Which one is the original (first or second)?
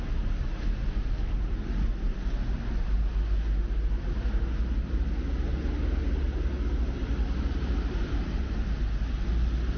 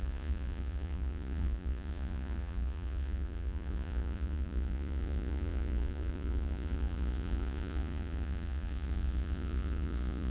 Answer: first